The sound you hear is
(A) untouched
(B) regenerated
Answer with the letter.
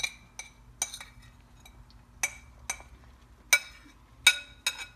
A